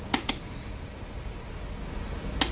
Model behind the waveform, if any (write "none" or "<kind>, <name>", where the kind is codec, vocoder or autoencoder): none